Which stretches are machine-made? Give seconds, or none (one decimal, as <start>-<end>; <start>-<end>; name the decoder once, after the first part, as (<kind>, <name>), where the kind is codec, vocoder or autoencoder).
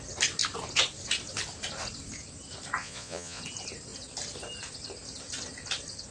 2.8-3.4 (vocoder, Vocos)